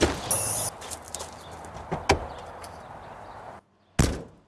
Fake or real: real